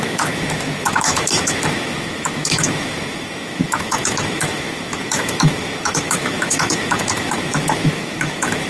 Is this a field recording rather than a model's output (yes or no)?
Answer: no